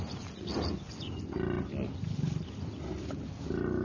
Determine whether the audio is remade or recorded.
recorded